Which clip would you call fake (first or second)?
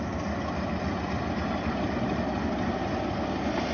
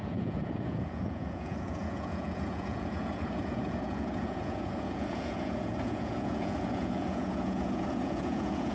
second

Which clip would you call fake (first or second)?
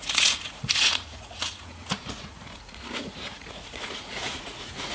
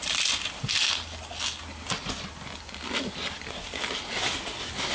first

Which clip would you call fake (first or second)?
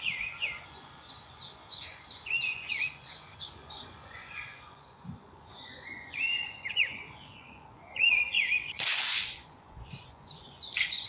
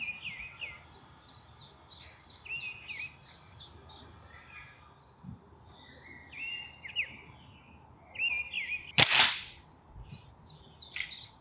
first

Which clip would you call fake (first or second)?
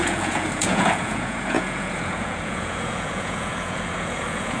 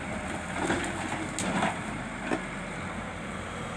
first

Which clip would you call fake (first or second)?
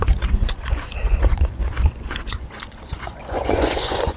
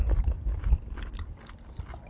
first